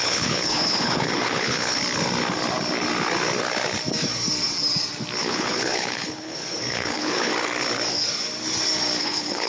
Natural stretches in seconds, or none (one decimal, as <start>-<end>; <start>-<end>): 1.8-5.2; 7.3-9.0